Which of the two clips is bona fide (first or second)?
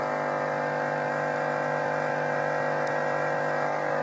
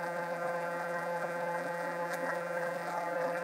first